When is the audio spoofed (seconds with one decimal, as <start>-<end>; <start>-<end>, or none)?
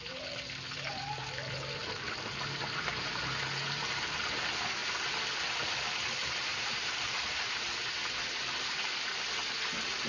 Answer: 1.8-3.2; 6.2-7.7